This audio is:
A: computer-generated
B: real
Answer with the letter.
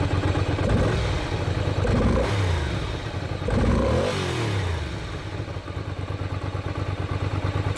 B